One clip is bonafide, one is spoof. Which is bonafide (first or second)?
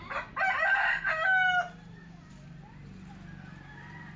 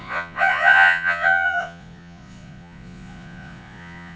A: first